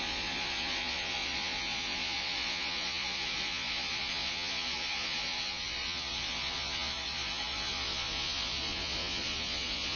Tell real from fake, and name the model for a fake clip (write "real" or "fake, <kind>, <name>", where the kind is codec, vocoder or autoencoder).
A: fake, vocoder, Vocos